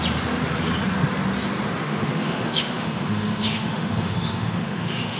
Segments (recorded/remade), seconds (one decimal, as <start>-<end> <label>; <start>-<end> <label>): 0.0-1.8 recorded; 1.8-5.2 remade